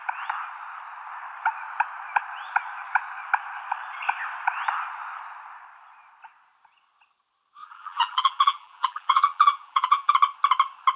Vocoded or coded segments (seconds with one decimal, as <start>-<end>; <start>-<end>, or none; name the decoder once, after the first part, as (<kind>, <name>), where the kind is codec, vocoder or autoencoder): 7.6-10.1 (vocoder, BigVGAN v2)